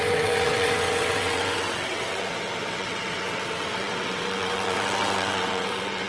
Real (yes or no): no